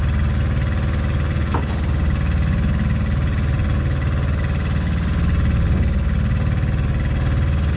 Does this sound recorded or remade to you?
recorded